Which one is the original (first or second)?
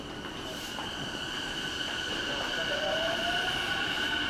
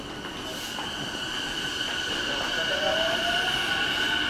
second